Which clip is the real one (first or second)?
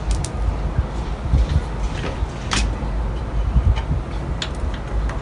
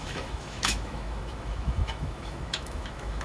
first